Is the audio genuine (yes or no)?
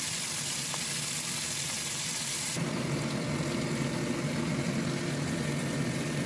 yes